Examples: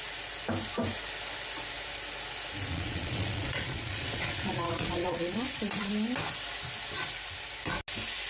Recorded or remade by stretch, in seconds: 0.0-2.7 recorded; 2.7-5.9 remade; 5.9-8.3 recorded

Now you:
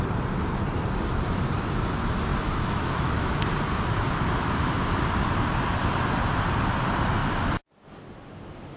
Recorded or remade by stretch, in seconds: 0.0-2.3 recorded; 2.3-3.3 remade; 3.3-8.8 recorded

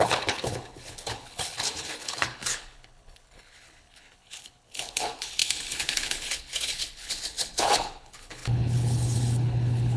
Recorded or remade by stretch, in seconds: 0.0-10.0 remade

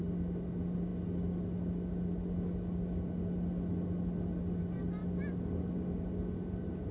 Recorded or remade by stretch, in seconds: 0.0-6.9 recorded

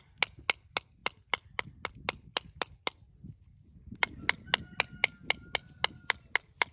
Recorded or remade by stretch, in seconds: 0.0-6.7 recorded

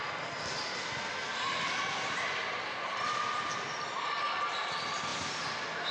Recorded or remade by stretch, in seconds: 0.0-5.9 recorded

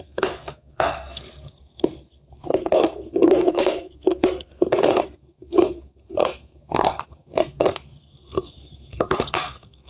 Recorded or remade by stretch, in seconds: 0.0-9.9 remade

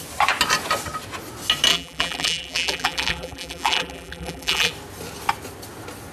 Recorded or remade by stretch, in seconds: 0.0-1.7 recorded; 1.7-4.7 remade; 4.7-6.1 recorded